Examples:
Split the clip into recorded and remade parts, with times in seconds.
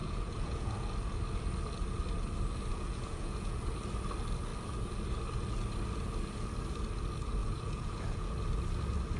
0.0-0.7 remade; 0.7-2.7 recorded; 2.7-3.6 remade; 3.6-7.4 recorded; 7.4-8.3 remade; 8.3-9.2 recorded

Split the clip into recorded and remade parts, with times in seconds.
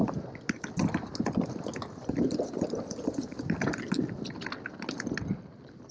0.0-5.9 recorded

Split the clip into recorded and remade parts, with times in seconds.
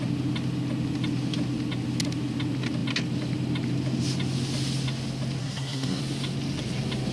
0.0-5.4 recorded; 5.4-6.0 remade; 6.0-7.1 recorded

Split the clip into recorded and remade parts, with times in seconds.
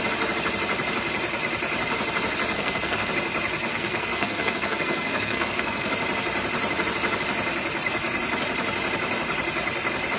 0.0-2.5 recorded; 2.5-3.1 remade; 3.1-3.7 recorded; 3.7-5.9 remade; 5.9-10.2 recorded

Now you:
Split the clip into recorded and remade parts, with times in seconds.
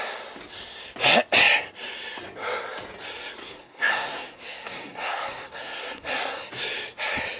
0.0-3.4 recorded; 3.4-6.5 remade; 6.5-7.4 recorded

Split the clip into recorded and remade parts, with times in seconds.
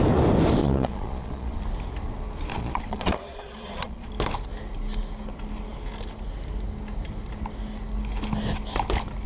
0.0-0.6 recorded; 0.6-1.6 remade; 1.6-2.5 recorded; 2.5-4.1 remade; 4.1-9.3 recorded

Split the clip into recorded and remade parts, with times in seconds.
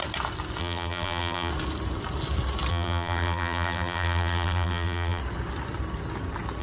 0.0-0.6 recorded; 0.6-1.5 remade; 1.5-2.7 recorded; 2.7-5.2 remade; 5.2-6.6 recorded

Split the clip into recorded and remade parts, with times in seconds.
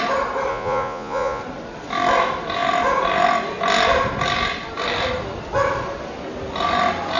0.0-0.5 recorded; 0.5-1.4 remade; 1.4-7.2 recorded